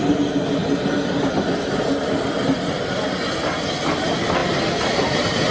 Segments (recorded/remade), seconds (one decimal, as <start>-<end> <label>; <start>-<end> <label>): 0.0-4.4 recorded; 4.4-5.5 remade